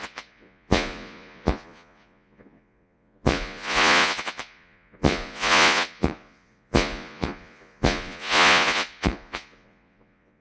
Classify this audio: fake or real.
fake